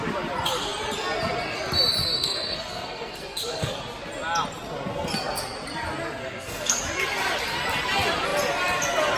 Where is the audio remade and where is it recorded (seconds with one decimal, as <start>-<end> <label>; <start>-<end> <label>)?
0.0-2.0 recorded; 2.0-3.8 remade; 3.8-6.2 recorded; 6.2-6.8 remade; 6.8-9.2 recorded